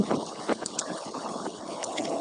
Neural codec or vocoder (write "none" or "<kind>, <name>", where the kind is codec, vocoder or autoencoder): codec, HILCodec